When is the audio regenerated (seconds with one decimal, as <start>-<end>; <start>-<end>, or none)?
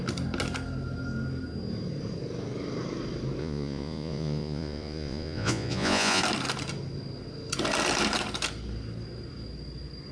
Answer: 3.4-6.2